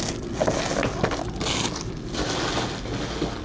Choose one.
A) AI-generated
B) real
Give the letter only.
B